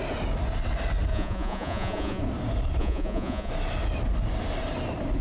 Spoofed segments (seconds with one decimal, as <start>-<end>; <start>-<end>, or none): 1.1-2.2; 2.8-3.5